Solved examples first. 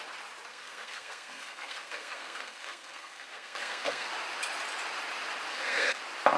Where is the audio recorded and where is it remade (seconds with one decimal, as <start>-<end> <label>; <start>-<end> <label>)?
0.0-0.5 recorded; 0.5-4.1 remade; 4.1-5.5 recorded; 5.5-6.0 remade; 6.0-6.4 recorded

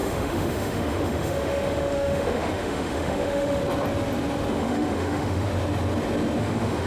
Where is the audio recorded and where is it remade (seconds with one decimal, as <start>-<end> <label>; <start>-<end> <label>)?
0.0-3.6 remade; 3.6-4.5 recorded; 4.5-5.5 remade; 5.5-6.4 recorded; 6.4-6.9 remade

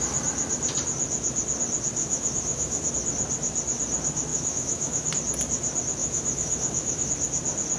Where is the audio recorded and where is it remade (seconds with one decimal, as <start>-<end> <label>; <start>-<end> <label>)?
0.0-2.0 recorded; 2.0-2.9 remade; 2.9-4.3 recorded; 4.3-5.1 remade; 5.1-6.0 recorded; 6.0-7.1 remade; 7.1-7.8 recorded

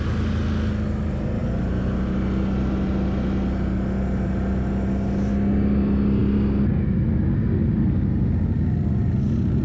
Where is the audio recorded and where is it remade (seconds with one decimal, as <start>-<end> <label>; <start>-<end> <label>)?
0.0-9.6 recorded

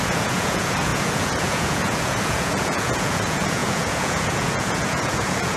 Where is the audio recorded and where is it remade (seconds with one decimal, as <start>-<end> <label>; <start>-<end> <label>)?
0.0-5.6 remade

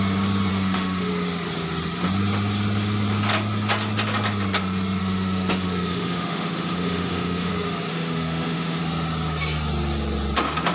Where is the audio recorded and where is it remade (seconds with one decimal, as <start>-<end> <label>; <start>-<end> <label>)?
0.0-0.5 recorded; 0.5-1.1 remade; 1.1-5.0 recorded; 5.0-7.5 remade; 7.5-7.9 recorded; 7.9-8.8 remade; 8.8-10.7 recorded